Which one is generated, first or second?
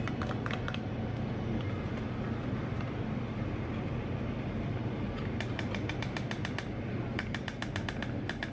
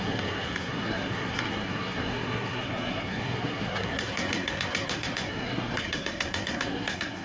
second